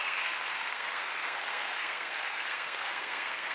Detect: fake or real fake